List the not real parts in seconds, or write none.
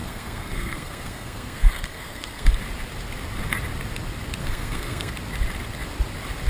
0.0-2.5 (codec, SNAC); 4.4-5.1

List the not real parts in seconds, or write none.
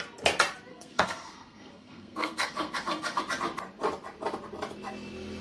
0.7-3.2 (codec, SNAC)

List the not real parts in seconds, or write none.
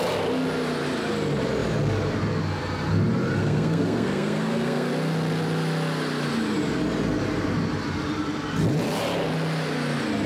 3.4-4.9 (codec, SNAC)